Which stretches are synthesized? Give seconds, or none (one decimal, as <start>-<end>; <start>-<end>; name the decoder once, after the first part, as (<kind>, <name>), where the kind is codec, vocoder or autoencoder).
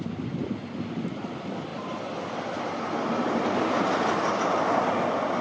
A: 1.7-4.9 (vocoder, BigVGAN v2)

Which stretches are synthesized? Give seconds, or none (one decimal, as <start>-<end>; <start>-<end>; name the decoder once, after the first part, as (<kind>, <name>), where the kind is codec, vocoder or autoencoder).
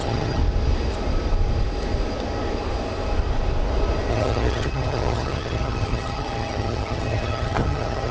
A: 0.0-0.4 (vocoder, HiFi-GAN); 4.1-8.1